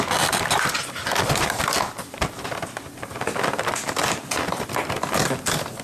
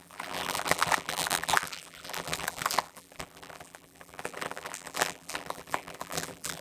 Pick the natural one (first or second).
first